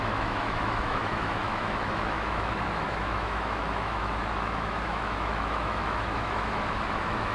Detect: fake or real fake